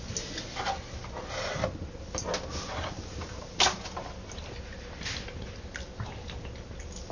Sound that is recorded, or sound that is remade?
recorded